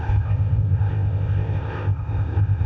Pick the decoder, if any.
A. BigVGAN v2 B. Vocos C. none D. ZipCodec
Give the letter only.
D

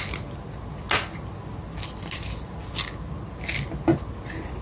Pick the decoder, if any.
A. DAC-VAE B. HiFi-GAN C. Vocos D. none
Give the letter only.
D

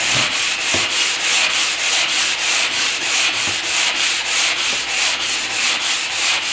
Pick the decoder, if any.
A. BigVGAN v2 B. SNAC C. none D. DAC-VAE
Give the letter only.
C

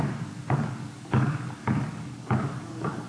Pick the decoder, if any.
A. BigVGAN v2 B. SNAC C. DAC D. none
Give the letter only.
C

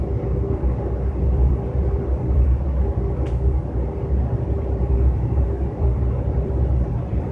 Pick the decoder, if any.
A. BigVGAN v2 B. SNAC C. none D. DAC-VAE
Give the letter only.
A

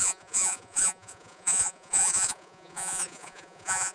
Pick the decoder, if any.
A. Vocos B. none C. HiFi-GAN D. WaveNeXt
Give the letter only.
A